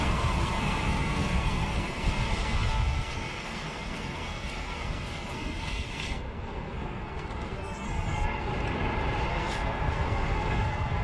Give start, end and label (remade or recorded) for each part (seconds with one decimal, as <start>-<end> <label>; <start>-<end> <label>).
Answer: 0.0-8.5 remade; 8.5-9.3 recorded; 9.3-11.0 remade